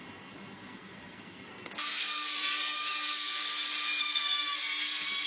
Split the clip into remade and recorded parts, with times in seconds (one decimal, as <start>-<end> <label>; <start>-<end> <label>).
0.0-3.4 remade; 3.4-4.0 recorded; 4.0-5.3 remade